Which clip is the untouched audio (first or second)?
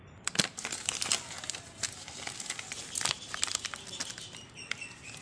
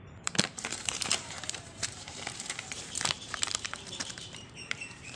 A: first